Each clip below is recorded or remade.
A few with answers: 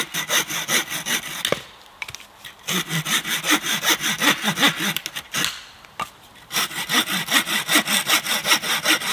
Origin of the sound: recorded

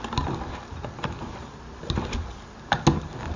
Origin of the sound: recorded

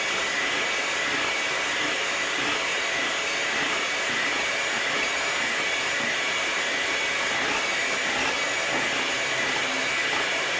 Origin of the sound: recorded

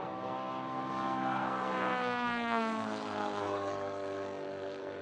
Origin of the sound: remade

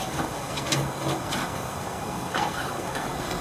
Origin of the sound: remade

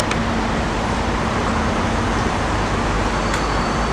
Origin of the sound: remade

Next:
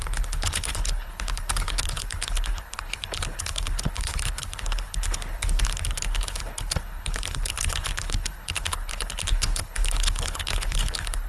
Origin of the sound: remade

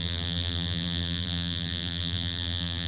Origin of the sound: remade